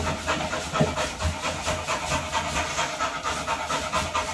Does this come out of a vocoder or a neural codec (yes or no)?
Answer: no